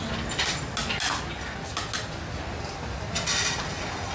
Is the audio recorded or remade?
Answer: recorded